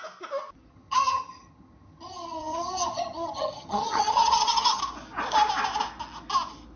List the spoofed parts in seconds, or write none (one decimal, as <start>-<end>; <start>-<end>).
0.7-4.8